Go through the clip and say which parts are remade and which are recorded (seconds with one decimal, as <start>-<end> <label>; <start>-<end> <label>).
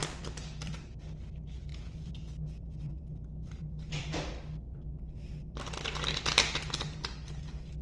0.0-1.2 remade; 1.2-1.7 recorded; 1.7-5.3 remade; 5.3-7.8 recorded